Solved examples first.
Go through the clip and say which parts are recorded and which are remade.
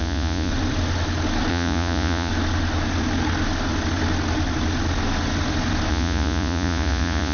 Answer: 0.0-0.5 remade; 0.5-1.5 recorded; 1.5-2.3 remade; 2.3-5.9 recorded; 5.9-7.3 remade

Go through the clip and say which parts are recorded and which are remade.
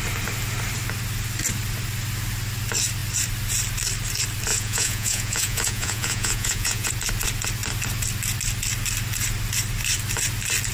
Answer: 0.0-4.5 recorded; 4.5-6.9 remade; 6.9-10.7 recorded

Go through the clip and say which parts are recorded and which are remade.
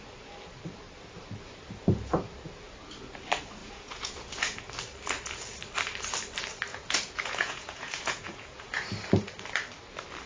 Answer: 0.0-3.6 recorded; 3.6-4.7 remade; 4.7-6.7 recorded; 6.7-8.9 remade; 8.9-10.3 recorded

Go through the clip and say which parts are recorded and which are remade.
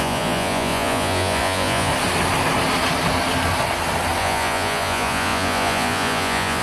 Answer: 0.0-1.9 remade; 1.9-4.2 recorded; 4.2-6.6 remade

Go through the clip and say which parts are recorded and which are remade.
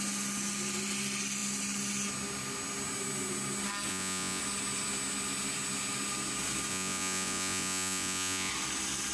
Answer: 0.0-3.9 recorded; 3.9-4.4 remade; 4.4-6.7 recorded; 6.7-8.5 remade; 8.5-9.1 recorded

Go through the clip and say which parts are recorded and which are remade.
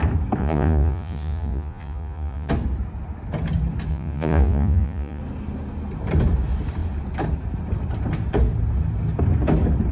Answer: 0.0-0.4 recorded; 0.4-2.5 remade; 2.5-3.9 recorded; 3.9-5.2 remade; 5.2-9.9 recorded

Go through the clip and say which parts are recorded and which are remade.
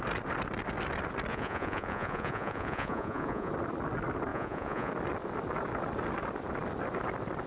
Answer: 0.0-1.3 recorded; 1.3-3.5 remade; 3.5-4.3 recorded; 4.3-4.9 remade; 4.9-7.5 recorded